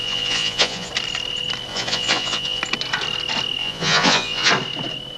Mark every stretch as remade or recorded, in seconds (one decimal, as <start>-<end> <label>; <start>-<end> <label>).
0.0-0.9 remade; 0.9-1.7 recorded; 1.7-2.6 remade; 2.6-3.6 recorded; 3.6-4.5 remade; 4.5-5.2 recorded